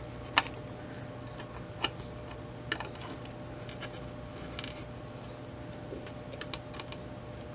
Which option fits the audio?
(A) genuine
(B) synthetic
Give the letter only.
A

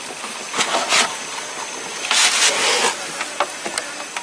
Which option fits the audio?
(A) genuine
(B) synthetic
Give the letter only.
A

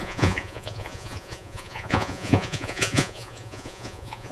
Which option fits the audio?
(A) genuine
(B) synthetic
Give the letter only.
B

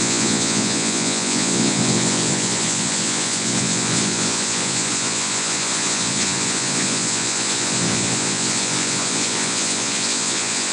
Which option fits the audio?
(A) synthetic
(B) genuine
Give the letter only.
A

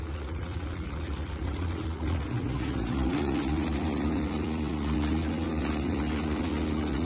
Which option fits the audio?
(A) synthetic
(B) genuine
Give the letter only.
A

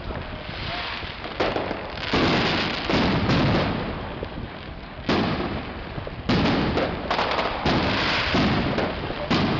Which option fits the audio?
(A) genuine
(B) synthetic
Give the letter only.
A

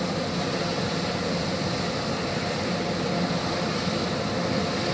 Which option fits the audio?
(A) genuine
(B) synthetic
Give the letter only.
A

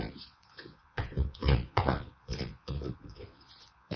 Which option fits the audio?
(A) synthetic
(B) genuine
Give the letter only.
A